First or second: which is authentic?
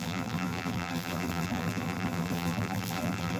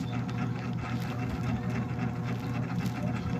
second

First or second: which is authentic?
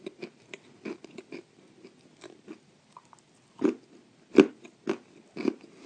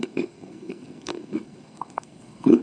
first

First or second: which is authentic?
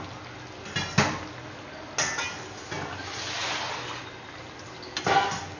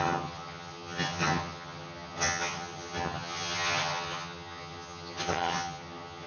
first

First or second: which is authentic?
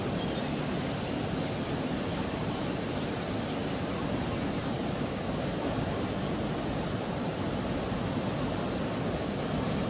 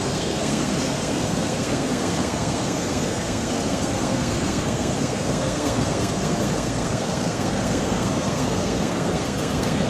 first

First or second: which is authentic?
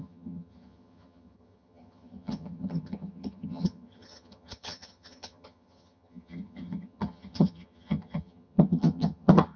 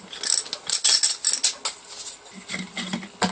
second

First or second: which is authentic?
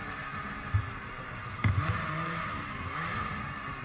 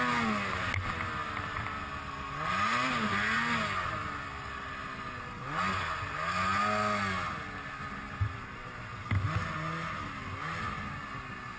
second